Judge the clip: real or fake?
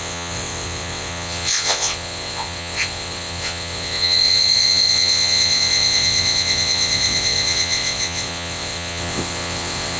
fake